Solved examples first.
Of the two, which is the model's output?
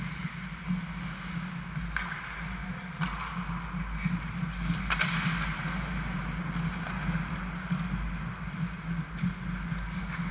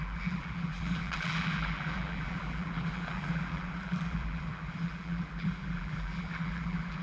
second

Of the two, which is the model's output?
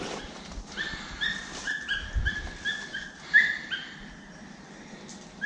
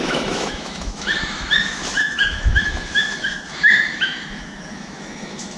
second